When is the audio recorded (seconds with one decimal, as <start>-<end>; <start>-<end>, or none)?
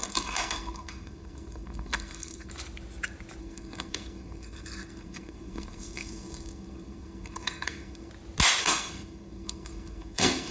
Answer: 2.5-3.4; 8.1-8.6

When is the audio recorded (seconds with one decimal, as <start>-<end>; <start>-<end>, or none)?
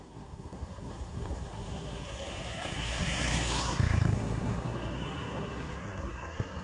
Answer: none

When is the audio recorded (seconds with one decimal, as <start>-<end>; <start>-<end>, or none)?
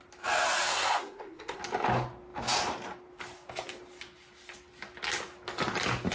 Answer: 0.0-0.7; 1.6-6.1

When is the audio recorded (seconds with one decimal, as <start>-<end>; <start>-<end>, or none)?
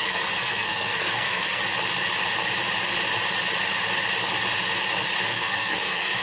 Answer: 1.6-5.3